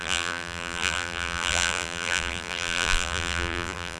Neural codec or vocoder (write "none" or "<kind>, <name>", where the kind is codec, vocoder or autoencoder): vocoder, BigVGAN v2